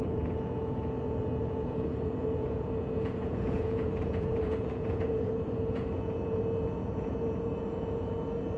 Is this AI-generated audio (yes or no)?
yes